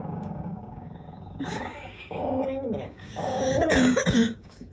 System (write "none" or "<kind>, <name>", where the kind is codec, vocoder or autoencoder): codec, DAC